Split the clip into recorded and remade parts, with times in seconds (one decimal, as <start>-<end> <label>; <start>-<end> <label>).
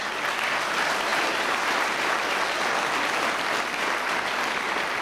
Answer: 0.0-5.0 recorded